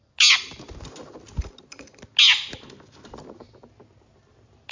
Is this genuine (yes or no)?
yes